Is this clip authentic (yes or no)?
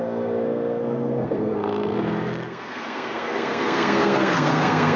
no